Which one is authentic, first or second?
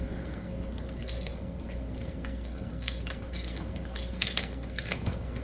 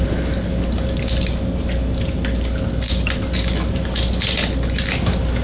second